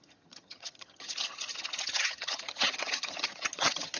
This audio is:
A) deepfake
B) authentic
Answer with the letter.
A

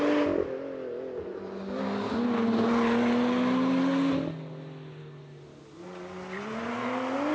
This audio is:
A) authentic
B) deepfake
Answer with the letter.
A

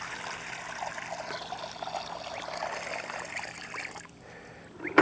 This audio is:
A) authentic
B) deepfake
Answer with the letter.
A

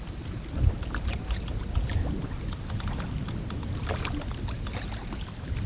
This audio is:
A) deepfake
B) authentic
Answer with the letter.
B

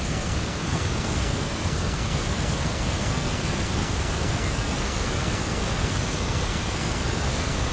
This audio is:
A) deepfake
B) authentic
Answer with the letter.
A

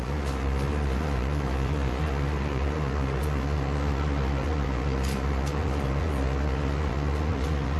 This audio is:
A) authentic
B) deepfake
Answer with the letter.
B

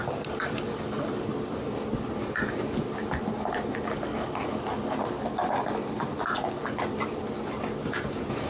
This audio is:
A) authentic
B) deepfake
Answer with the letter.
A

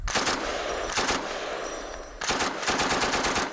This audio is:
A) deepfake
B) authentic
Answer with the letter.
B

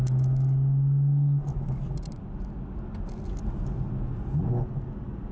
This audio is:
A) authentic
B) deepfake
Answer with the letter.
A